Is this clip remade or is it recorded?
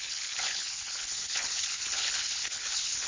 remade